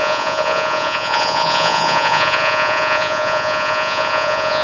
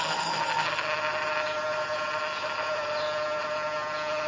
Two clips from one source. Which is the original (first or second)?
second